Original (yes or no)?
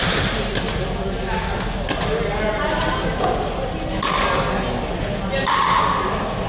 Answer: yes